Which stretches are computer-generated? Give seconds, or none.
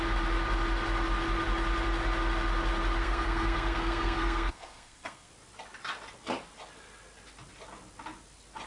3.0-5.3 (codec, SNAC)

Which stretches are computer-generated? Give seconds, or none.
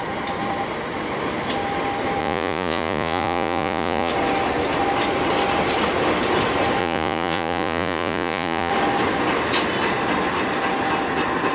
2.2-4.1 (vocoder, Vocos); 6.8-8.7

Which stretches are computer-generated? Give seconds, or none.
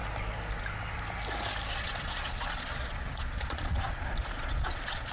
1.7-5.1 (vocoder, Vocos)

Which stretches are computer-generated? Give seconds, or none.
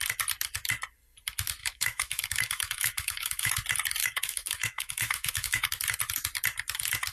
1.6-3.5 (autoencoder, DAC-VAE); 4.0-5.7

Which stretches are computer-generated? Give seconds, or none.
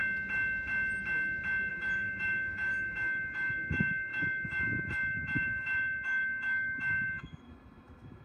1.7-8.2 (autoencoder, DAC-VAE)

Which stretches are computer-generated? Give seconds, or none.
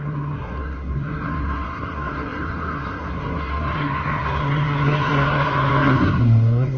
0.0-6.8 (codec, SNAC)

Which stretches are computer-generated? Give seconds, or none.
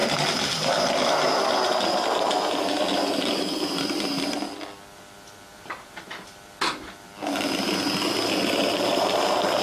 5.5-6.0 (vocoder, BigVGAN v2)